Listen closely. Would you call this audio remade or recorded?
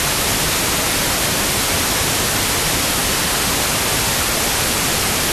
recorded